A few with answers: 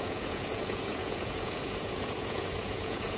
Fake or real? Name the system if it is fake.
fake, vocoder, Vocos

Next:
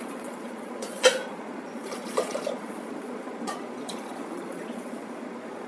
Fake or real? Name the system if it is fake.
fake, vocoder, Vocos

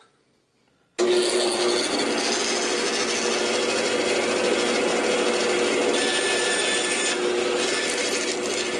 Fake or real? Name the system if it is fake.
real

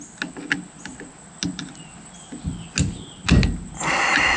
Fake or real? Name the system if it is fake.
real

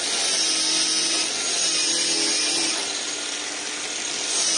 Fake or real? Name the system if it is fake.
real